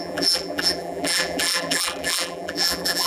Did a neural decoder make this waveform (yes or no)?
yes